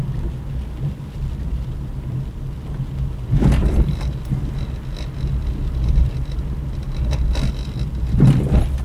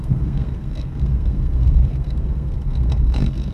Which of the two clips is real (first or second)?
first